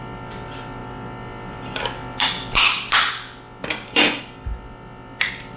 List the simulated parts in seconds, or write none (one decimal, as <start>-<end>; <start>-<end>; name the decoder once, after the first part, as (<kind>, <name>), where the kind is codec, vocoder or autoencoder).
none